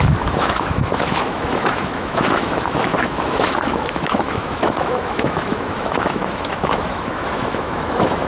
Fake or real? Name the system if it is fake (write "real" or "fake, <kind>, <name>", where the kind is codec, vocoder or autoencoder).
fake, autoencoder, DAC-VAE